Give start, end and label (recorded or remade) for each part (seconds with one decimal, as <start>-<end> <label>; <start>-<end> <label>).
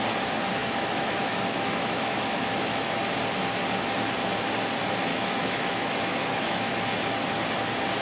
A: 0.0-0.6 recorded; 0.6-2.9 remade; 2.9-5.1 recorded; 5.1-6.7 remade; 6.7-8.0 recorded